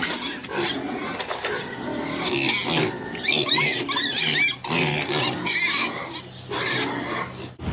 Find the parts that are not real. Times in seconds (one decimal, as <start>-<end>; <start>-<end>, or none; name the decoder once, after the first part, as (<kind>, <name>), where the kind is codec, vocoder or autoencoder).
none